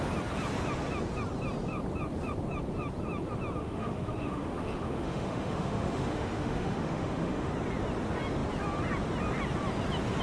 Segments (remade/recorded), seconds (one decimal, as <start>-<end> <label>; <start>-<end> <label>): 0.0-3.6 recorded; 3.6-7.5 remade; 7.5-10.2 recorded